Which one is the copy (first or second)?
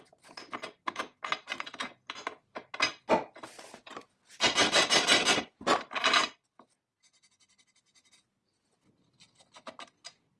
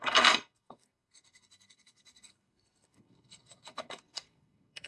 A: second